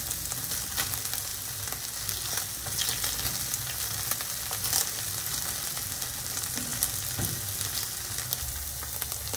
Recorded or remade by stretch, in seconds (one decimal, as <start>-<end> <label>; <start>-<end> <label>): 0.0-9.4 recorded